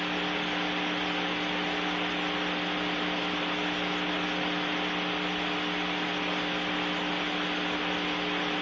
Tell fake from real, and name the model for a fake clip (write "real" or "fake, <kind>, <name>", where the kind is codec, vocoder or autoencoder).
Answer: real